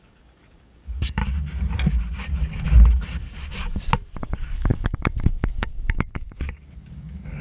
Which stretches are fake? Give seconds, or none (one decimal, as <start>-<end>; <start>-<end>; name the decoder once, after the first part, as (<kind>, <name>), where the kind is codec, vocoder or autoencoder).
0.0-1.2 (codec, DAC); 4.2-7.4

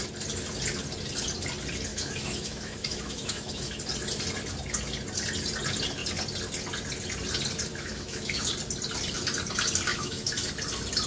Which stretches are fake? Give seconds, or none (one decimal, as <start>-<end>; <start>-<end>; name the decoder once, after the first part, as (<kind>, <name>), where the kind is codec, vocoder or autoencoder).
1.9-3.8 (autoencoder, DAC-VAE); 7.7-8.5; 9.9-10.5

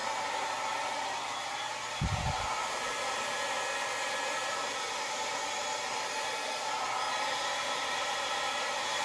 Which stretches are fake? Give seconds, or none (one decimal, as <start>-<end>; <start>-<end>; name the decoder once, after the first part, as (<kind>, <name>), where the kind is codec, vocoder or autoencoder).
0.0-5.6 (vocoder, BigVGAN v2); 7.3-9.0

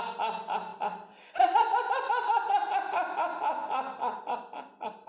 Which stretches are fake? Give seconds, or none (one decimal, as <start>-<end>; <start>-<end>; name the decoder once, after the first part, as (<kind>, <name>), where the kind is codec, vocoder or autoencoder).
none

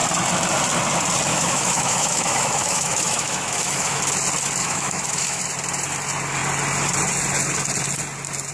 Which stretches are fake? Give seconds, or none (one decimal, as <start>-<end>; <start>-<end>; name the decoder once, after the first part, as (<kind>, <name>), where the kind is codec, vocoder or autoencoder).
1.3-4.0 (autoencoder, DAC-VAE); 4.6-5.4

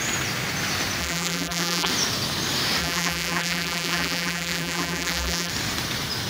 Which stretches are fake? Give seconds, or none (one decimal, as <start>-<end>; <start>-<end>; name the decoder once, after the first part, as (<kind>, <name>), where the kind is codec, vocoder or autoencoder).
1.0-1.9 (vocoder, BigVGAN v2); 2.8-5.5